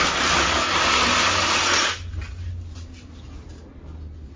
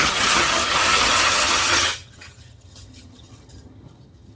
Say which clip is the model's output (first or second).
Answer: second